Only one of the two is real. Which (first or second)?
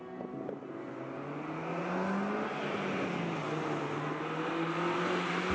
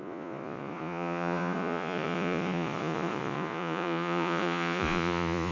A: first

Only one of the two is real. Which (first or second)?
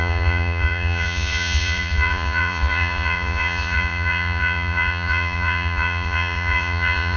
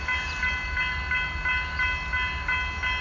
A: second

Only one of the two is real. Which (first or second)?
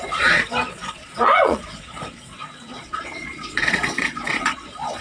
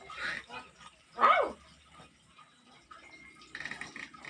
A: second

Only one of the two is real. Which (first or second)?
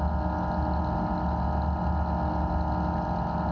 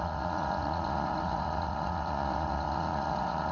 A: first